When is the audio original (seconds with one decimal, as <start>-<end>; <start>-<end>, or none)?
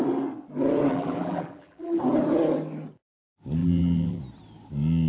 0.0-0.9; 2.0-3.6; 4.2-5.1